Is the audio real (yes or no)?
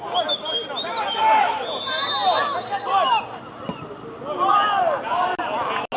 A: yes